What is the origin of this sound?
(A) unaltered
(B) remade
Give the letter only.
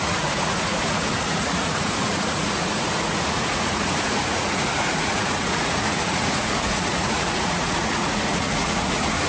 B